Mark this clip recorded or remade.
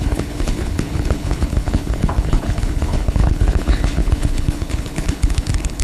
remade